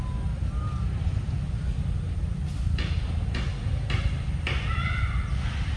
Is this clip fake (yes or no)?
no